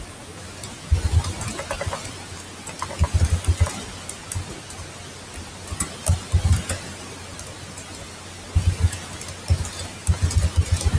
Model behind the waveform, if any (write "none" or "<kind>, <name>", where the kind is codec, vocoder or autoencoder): none